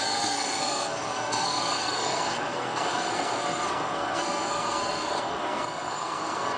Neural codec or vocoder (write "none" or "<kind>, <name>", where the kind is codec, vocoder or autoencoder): codec, SNAC